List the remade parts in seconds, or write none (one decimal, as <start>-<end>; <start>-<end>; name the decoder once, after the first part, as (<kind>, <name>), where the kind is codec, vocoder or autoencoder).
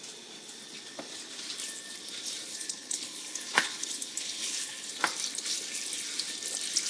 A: 2.5-4.9 (codec, HILCodec)